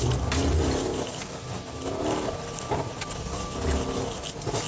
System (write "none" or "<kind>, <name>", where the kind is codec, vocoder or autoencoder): none